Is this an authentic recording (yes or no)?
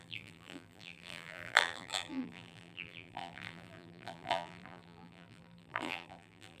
no